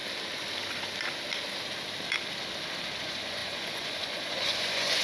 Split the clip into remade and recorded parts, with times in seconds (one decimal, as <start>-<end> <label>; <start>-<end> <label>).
0.0-3.0 recorded; 3.0-5.0 remade

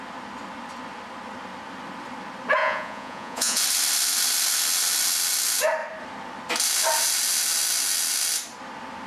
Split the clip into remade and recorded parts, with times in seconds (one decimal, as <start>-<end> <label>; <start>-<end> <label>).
0.0-2.6 recorded; 2.6-3.6 remade; 3.6-9.1 recorded

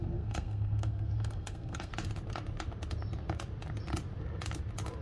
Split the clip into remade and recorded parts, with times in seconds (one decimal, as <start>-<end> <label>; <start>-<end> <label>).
0.0-1.9 remade; 1.9-5.0 recorded